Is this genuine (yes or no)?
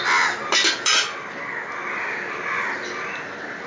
yes